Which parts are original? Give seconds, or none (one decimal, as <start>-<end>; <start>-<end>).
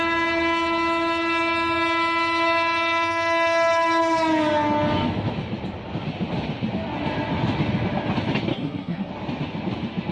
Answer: 0.0-8.5; 9.1-10.1